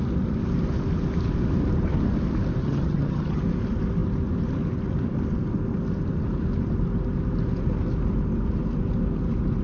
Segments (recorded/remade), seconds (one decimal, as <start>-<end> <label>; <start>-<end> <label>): 0.0-2.6 recorded; 2.6-3.4 remade; 3.4-9.6 recorded